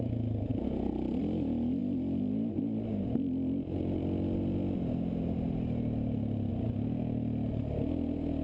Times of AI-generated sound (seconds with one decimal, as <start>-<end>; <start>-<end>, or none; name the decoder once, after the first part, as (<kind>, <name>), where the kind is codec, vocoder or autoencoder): none